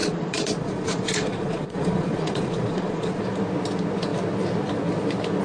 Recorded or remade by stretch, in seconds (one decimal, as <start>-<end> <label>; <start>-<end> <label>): 0.0-3.2 remade; 3.2-5.4 recorded